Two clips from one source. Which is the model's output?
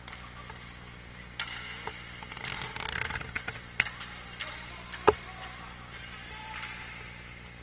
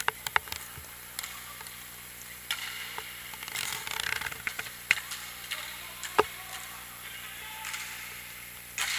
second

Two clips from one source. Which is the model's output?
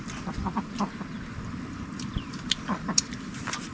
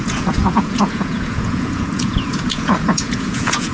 second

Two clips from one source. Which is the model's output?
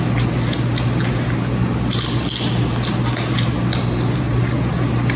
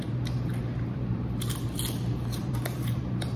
second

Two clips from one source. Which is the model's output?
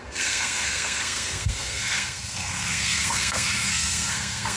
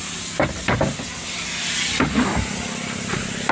first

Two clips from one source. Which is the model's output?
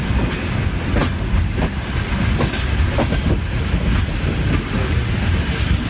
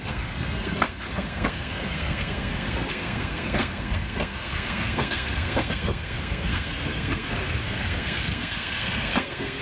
second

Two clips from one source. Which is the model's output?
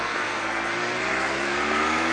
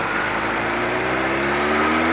first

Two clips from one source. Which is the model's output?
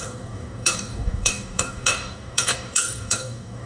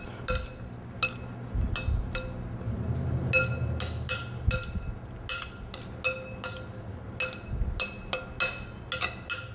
first